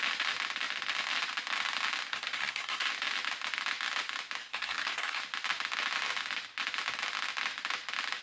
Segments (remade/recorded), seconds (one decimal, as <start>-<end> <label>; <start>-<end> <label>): 0.0-2.1 recorded; 2.1-2.9 remade; 2.9-4.4 recorded; 4.4-5.2 remade; 5.2-8.2 recorded